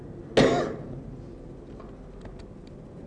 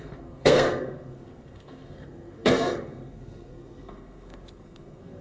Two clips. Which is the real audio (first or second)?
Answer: first